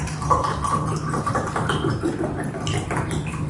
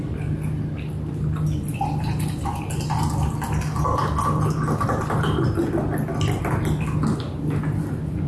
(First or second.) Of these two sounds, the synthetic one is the first